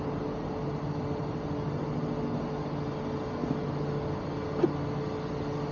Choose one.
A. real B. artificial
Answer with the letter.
A